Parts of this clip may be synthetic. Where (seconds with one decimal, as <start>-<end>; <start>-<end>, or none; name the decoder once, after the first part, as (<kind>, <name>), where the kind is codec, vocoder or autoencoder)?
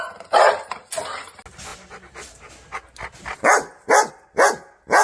none